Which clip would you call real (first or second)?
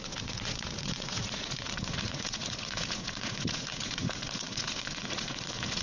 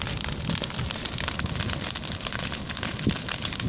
second